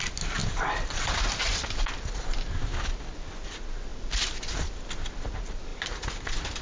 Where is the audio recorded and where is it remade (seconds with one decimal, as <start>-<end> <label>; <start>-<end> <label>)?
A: 0.0-6.6 recorded